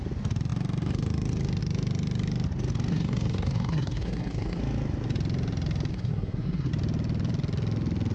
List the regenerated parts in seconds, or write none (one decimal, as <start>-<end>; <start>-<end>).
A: 2.9-4.6; 5.9-6.7